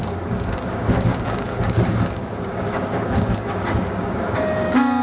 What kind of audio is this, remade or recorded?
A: remade